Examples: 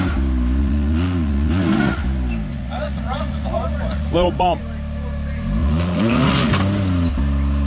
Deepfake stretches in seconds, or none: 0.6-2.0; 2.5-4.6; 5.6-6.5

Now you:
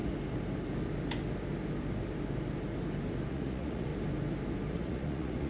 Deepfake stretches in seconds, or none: 3.3-3.9; 4.7-5.5

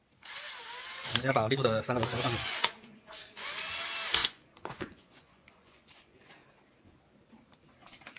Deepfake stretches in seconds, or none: 0.8-3.8; 4.2-6.3

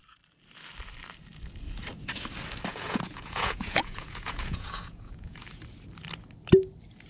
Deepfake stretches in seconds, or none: 2.7-5.4

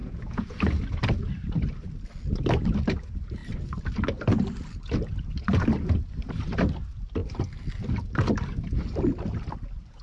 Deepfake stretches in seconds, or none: 0.0-0.6

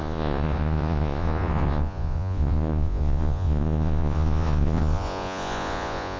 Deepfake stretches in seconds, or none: 0.0-6.2